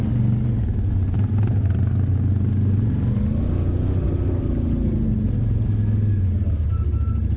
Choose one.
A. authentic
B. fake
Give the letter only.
A